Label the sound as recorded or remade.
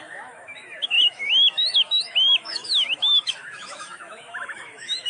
remade